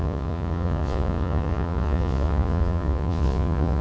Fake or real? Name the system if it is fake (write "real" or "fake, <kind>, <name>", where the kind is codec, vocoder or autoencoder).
fake, vocoder, Vocos